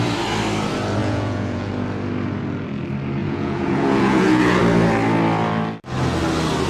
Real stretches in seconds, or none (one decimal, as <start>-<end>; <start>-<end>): 0.0-1.0; 1.7-3.2; 4.6-6.7